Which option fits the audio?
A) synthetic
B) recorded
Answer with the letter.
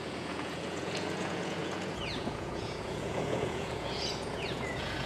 A